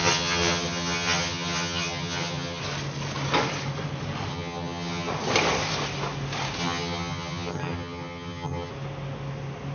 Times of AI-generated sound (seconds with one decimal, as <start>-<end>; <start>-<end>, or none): 0.0-2.6; 4.3-5.1; 6.6-8.7